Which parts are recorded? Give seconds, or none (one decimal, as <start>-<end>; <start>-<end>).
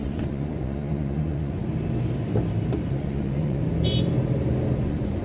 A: 1.6-2.9; 3.6-4.8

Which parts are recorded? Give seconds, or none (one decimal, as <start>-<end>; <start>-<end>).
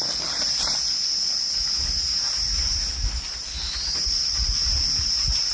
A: 0.0-5.5